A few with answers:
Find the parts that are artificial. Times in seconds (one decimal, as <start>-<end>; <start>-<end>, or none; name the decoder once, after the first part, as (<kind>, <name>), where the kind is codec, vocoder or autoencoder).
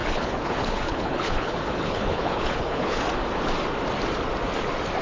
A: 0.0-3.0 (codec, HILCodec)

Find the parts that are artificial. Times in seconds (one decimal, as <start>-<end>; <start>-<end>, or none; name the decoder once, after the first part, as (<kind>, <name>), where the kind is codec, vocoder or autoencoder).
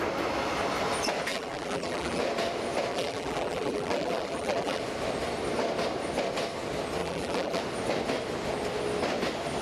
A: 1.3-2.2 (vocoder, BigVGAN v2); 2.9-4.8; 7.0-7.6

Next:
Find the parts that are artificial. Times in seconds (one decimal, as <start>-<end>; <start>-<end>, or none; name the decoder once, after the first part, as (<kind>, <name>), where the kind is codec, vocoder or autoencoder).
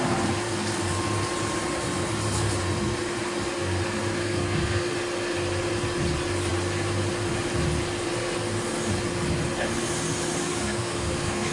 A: 4.2-4.9 (codec, SNAC); 10.4-11.5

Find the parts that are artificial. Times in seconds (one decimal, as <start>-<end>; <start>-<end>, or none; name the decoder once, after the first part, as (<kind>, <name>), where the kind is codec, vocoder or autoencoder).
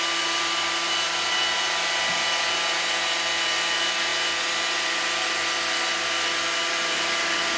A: none